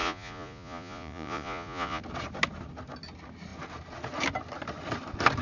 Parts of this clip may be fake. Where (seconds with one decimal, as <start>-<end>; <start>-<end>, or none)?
0.0-2.0

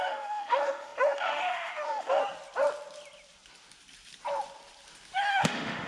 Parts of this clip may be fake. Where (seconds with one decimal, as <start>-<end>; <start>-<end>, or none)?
0.0-2.2; 5.3-5.9

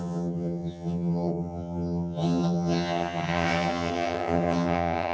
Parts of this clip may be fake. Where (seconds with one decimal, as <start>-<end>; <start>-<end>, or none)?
0.0-5.1

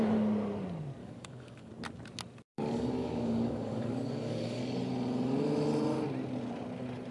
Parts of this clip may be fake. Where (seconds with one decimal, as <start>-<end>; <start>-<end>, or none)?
1.0-1.7; 2.5-4.6